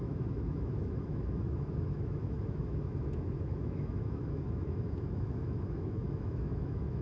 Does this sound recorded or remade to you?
remade